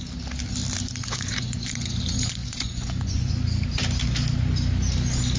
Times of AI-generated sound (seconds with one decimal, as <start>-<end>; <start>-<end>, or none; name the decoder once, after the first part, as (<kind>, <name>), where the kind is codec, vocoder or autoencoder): 1.1-2.0 (vocoder, Vocos); 2.4-3.3